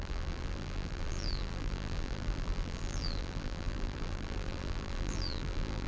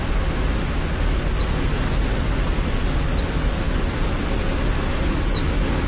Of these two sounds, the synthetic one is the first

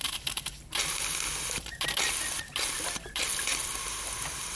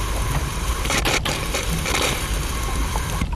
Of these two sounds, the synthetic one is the second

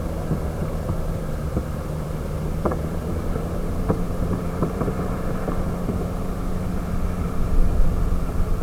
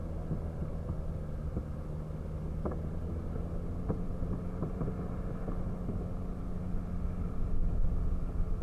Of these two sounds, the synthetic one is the first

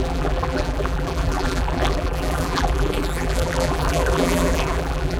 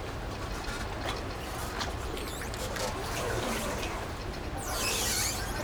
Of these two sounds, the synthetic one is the first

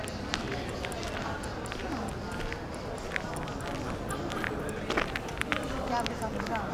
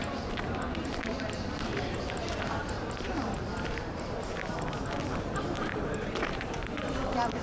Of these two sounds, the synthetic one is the second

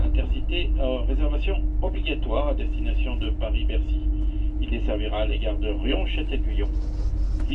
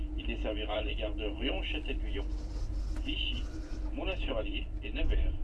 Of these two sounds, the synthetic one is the second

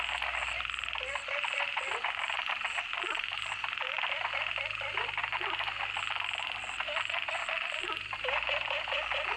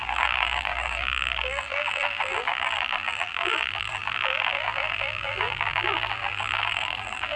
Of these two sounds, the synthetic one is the second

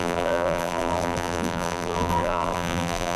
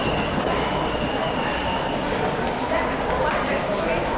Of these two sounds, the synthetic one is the first